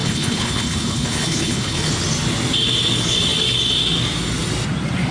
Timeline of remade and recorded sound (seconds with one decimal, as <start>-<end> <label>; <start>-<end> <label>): 0.0-1.9 remade; 1.9-5.1 recorded